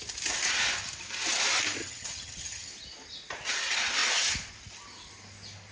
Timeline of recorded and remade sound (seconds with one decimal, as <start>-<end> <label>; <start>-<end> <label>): 0.0-1.8 recorded; 1.8-2.7 remade; 2.7-5.7 recorded